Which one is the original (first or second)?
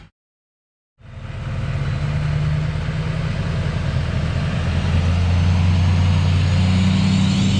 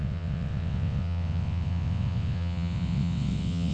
first